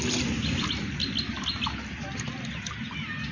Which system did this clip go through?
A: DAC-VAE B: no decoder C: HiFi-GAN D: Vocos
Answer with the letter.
B